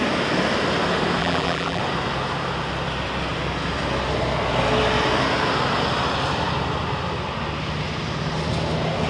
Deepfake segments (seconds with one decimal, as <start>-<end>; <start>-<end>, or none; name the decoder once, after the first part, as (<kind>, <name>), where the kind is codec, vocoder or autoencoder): 1.2-1.8 (vocoder, BigVGAN v2)